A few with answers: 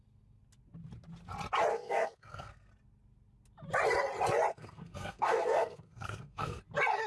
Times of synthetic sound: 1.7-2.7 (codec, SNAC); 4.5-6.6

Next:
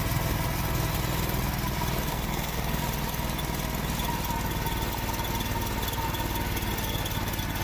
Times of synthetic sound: 2.1-2.8 (codec, SNAC)

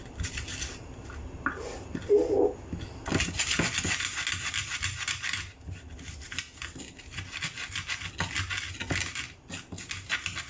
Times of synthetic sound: none